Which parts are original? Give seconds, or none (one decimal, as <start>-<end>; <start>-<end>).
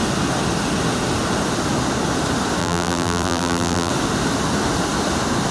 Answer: 0.0-2.6; 3.9-5.5